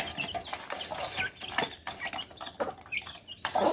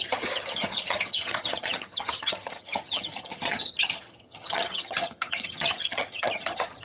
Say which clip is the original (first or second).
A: first